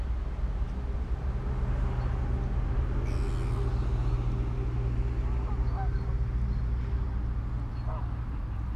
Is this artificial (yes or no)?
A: no